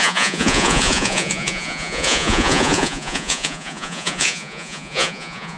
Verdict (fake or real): fake